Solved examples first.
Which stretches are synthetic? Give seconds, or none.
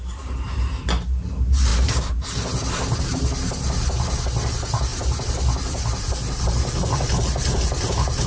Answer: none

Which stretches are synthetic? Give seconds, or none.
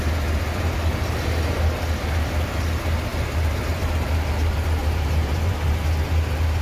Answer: 4.8-5.7 (vocoder, BigVGAN v2)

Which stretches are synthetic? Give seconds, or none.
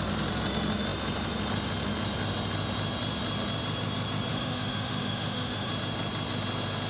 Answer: 4.3-5.7 (autoencoder, DAC-VAE)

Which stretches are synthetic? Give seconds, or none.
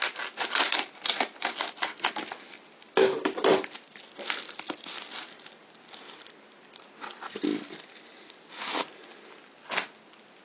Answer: 3.5-4.1 (vocoder, BigVGAN v2); 7.5-8.0